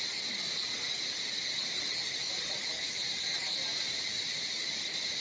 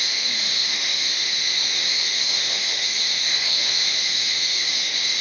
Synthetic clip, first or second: second